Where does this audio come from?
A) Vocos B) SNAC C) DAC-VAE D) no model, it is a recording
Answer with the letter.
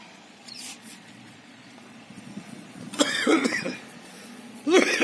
A